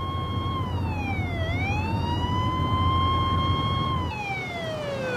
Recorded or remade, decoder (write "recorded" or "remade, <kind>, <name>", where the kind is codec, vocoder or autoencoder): recorded